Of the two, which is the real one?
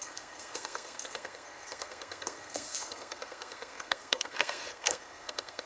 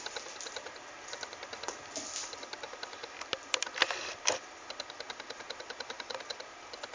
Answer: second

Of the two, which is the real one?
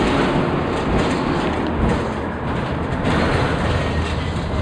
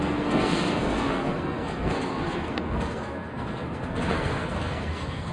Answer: first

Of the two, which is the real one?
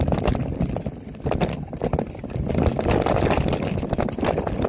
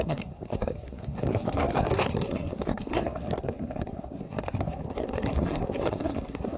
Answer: first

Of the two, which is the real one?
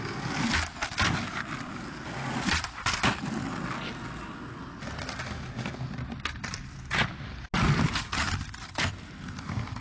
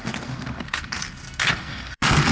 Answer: first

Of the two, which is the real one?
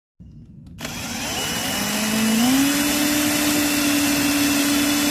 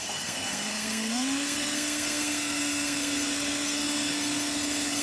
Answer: first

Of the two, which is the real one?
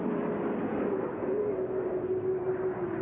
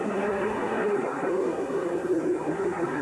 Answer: first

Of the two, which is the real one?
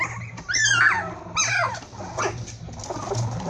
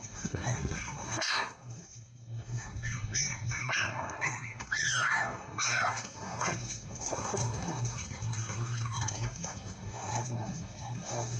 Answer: first